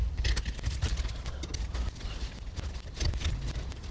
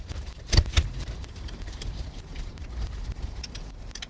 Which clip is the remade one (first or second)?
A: second